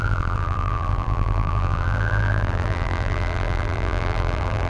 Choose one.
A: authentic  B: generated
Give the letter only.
B